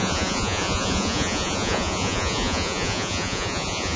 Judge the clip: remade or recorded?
remade